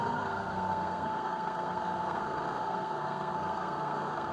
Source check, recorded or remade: remade